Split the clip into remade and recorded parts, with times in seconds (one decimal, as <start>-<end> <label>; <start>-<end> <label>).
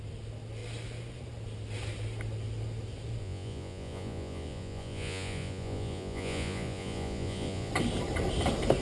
0.0-3.2 recorded; 3.2-7.7 remade; 7.7-8.8 recorded